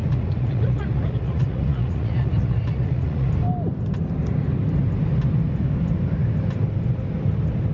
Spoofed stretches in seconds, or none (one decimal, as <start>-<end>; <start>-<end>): 0.0-3.3